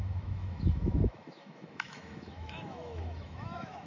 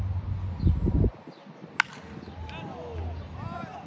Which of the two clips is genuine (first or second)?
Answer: second